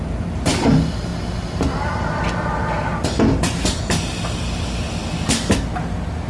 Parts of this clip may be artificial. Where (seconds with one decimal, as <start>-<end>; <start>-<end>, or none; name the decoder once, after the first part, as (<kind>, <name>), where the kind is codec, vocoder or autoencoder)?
0.0-1.1 (vocoder, BigVGAN v2); 3.8-5.0